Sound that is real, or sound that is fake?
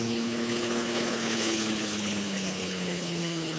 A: fake